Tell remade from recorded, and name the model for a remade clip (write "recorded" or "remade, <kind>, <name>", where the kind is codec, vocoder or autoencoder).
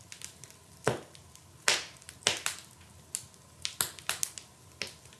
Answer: recorded